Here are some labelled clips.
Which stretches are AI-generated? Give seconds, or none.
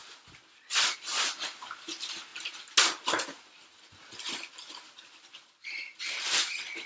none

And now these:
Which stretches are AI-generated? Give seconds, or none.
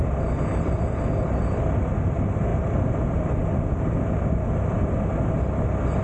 none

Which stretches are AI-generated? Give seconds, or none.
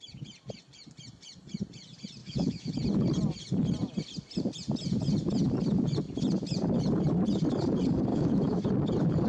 2.2-2.7 (autoencoder, DAC-VAE); 8.1-8.7